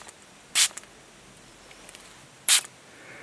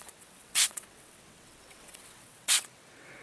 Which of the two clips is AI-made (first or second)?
second